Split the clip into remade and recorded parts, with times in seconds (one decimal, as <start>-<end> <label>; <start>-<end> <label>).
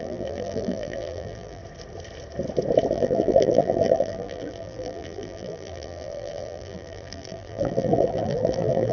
0.0-1.6 remade; 1.6-2.9 recorded; 2.9-8.9 remade